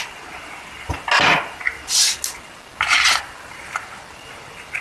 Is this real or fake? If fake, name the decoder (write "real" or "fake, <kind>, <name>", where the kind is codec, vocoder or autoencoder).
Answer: real